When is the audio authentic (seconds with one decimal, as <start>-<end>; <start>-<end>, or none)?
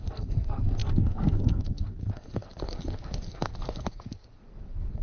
none